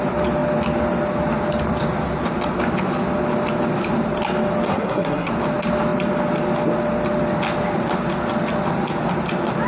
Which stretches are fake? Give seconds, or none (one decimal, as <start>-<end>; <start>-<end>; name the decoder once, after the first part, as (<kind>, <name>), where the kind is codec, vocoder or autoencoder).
4.7-5.3 (codec, SNAC)